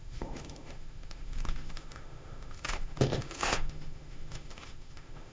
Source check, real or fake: fake